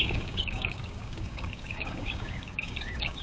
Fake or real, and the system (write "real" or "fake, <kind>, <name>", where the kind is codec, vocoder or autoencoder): fake, codec, DAC